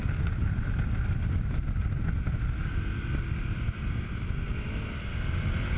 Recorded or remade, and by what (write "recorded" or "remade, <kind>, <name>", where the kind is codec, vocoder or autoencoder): recorded